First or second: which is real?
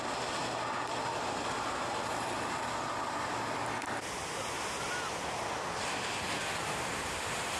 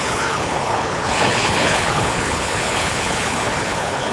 first